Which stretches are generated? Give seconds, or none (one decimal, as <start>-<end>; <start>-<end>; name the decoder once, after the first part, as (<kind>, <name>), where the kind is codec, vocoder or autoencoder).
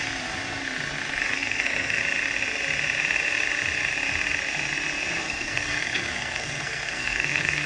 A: 1.3-2.0 (codec, SNAC); 5.2-7.7